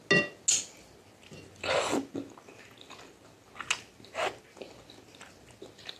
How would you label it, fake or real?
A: real